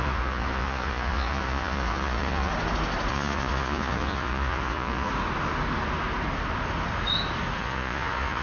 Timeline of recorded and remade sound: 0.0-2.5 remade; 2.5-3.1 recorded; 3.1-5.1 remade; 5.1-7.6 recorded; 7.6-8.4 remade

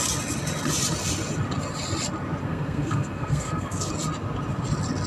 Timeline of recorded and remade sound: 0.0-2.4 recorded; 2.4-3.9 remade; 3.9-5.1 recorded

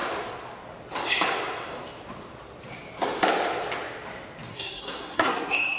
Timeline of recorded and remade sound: 0.0-4.5 recorded; 4.5-5.8 remade

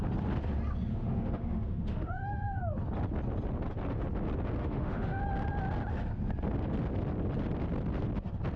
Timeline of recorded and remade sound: 0.0-0.9 recorded; 0.9-2.6 remade; 2.6-4.6 recorded; 4.6-5.2 remade; 5.2-8.6 recorded

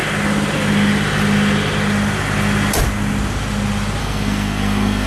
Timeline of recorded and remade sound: 0.0-4.0 recorded; 4.0-5.1 remade